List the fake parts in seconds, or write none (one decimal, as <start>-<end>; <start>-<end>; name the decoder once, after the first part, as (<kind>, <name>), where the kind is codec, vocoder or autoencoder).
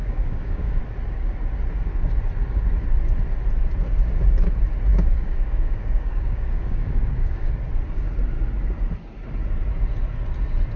0.0-0.8 (codec, DAC); 4.9-7.5